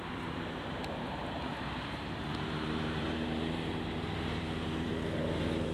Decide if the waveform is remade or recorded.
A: remade